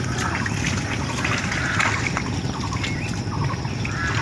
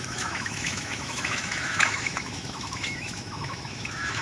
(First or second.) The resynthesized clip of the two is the second